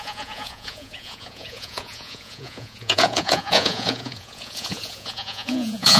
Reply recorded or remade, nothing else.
remade